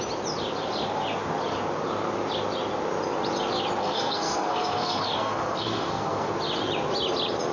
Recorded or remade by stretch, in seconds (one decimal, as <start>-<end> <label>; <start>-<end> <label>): 0.0-3.8 recorded; 3.8-6.3 remade; 6.3-7.5 recorded